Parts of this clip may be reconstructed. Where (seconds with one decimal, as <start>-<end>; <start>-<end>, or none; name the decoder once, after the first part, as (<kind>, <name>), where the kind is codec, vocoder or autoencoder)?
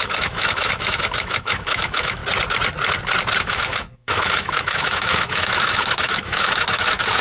0.0-2.2 (autoencoder, DAC-VAE); 3.4-7.2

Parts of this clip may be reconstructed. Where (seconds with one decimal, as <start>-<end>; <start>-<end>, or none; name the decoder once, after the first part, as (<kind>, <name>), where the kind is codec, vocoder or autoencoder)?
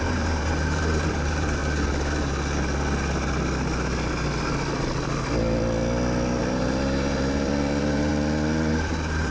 0.0-1.6 (vocoder, BigVGAN v2); 6.3-8.1; 8.7-9.3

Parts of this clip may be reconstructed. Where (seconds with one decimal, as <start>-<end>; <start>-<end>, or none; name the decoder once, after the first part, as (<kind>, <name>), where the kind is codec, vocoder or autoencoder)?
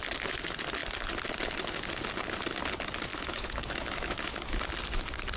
3.1-4.6 (autoencoder, DAC-VAE)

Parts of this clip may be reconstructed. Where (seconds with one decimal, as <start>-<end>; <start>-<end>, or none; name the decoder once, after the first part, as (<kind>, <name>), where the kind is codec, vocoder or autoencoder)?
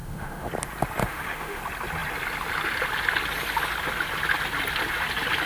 0.0-0.5 (autoencoder, DAC-VAE); 1.0-1.6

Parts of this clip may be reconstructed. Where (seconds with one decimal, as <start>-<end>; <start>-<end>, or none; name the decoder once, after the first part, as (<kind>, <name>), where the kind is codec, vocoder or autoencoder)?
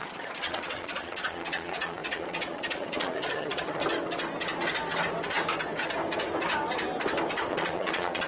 0.0-3.8 (vocoder, Vocos); 7.5-8.3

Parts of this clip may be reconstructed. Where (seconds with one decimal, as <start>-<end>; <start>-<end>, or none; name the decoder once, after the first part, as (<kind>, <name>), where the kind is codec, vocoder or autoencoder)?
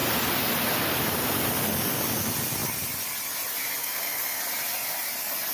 3.8-4.4 (codec, SNAC)